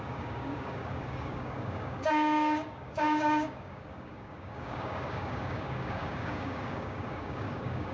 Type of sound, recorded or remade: remade